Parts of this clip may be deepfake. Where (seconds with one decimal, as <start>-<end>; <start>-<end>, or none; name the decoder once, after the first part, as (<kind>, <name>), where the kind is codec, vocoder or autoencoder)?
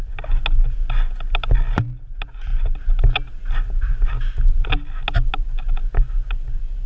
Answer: none